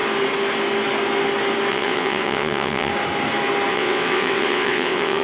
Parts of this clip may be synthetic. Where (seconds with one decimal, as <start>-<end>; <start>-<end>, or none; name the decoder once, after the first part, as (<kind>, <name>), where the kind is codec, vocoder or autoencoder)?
1.7-2.9 (vocoder, WaveNeXt); 3.7-5.2